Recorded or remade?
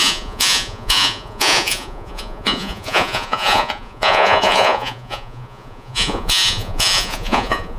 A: remade